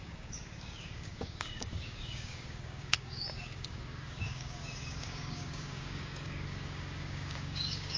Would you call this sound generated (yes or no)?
yes